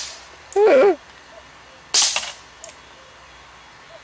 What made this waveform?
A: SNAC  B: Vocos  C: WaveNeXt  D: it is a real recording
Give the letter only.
D